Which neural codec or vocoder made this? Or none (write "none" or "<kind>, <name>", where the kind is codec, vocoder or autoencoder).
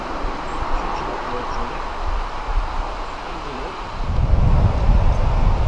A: vocoder, BigVGAN v2